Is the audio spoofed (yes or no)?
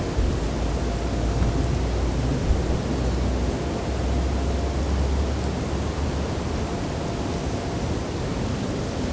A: no